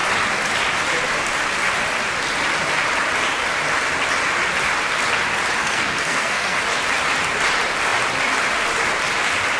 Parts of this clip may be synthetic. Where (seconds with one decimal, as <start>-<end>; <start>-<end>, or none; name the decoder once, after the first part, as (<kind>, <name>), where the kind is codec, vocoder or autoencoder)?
5.6-6.6 (codec, SNAC)